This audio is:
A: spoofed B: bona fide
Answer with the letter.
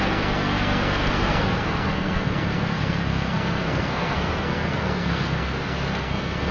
A